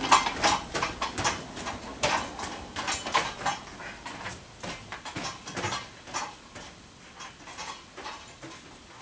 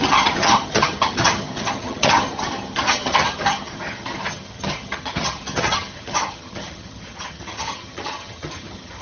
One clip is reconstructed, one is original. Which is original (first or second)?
first